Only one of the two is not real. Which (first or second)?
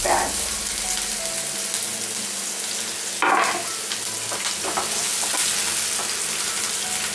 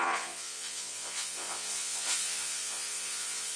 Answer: second